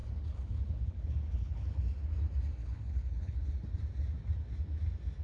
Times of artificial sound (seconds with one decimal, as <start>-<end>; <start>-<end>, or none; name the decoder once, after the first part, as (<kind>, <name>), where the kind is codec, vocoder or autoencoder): 0.0-1.8 (codec, HILCodec); 2.6-3.5